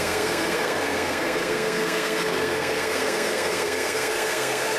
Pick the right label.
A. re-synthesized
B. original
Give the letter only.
A